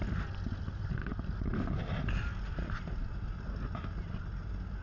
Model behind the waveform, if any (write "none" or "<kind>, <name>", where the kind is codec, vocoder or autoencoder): none